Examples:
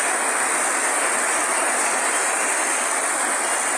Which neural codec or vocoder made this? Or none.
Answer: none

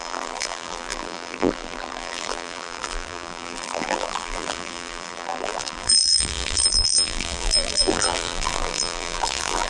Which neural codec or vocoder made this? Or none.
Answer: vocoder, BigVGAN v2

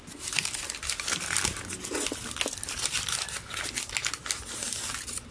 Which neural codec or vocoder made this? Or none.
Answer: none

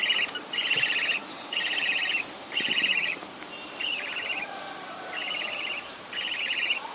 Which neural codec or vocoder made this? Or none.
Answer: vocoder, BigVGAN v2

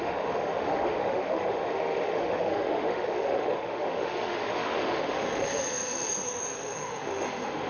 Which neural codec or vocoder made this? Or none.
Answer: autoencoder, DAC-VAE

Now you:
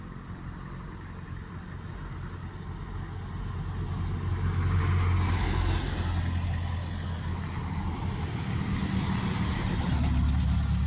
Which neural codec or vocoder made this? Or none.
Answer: none